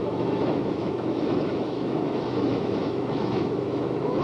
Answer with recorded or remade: remade